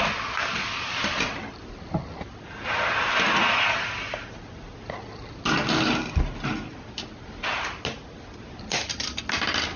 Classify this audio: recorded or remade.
recorded